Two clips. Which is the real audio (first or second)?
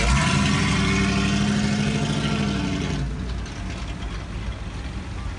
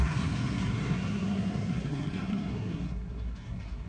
first